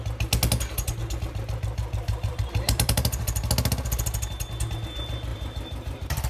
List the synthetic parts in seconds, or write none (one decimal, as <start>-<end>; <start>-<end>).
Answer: 1.0-3.5; 5.3-6.3